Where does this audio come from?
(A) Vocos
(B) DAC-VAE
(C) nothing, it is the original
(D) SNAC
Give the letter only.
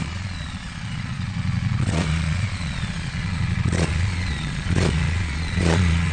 A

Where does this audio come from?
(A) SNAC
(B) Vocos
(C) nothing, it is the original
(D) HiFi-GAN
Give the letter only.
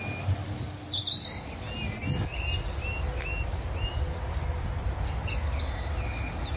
C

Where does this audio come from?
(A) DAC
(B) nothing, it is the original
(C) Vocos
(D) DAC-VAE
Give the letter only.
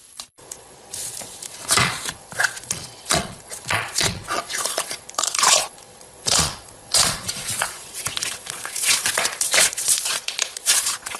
C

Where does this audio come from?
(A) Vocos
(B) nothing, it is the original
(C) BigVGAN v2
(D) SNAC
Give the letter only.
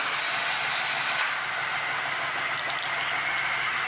B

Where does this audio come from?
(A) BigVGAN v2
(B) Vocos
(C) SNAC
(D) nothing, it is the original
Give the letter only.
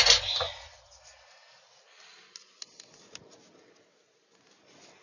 D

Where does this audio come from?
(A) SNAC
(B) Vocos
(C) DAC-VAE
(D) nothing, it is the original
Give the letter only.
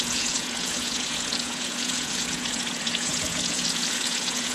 B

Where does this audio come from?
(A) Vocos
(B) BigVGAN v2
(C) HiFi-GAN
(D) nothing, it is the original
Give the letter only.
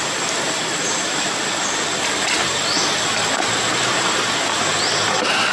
D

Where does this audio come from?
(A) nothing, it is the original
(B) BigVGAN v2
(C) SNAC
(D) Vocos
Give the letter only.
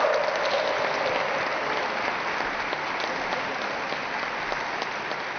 A